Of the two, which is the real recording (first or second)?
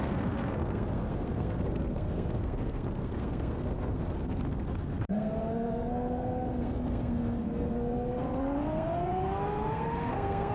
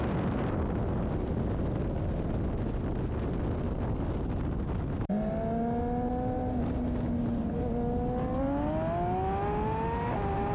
second